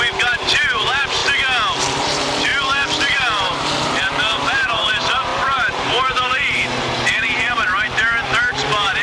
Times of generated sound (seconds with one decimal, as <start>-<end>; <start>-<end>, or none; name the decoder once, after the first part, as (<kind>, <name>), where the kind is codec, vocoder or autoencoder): 0.0-1.2 (vocoder, BigVGAN v2); 1.8-2.5; 3.0-9.0